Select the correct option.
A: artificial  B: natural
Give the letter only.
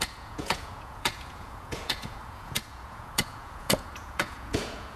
A